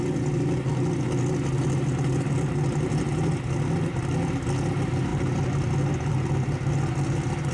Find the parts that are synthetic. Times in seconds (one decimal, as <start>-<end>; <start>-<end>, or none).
none